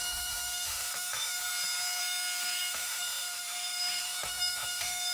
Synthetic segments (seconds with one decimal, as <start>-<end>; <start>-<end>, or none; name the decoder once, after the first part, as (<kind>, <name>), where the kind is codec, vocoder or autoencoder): 0.0-1.4 (autoencoder, DAC-VAE); 2.0-5.1